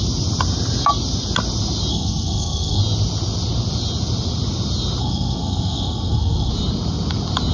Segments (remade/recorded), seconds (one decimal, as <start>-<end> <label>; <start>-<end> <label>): 0.0-1.9 recorded; 1.9-2.8 remade; 2.8-5.0 recorded; 5.0-6.5 remade; 6.5-7.5 recorded